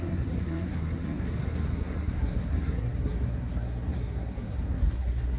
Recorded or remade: remade